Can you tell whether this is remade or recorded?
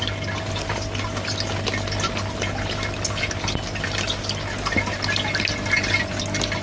recorded